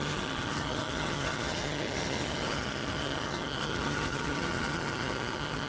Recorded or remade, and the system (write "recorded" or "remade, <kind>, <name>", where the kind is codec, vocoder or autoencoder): remade, vocoder, HiFi-GAN